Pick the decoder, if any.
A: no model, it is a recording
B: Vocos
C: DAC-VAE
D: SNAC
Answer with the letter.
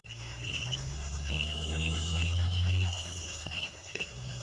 D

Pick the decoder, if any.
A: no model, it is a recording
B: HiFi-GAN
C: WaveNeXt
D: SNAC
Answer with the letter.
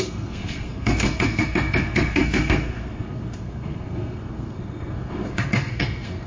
D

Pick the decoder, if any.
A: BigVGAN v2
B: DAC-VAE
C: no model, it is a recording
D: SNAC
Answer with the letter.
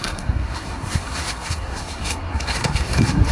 D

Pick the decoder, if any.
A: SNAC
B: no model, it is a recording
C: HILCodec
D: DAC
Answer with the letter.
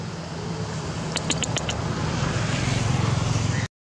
B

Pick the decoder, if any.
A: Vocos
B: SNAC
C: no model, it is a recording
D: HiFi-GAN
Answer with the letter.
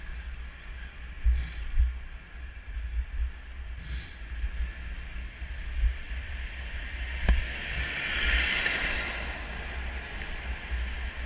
C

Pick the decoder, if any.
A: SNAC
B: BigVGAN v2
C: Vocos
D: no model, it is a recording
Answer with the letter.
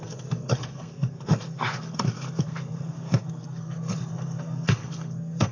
A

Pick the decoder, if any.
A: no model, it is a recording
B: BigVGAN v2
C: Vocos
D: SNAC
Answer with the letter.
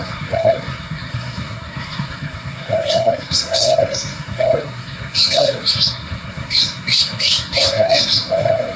D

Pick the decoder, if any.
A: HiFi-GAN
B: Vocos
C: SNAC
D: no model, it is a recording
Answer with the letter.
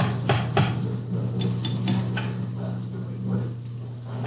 D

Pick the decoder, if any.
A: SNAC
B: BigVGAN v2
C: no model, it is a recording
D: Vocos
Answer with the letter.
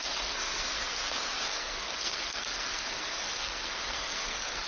A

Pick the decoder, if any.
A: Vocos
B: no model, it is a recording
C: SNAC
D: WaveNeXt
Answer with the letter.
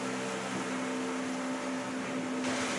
B